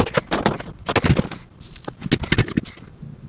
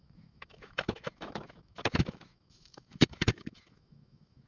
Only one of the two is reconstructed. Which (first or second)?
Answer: second